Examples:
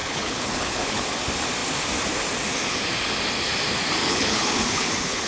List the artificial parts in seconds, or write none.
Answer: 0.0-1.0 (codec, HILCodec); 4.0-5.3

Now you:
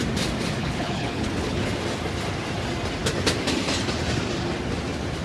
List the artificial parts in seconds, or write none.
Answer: 0.6-1.7 (codec, HILCodec)

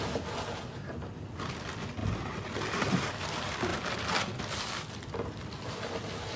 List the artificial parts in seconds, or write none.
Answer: none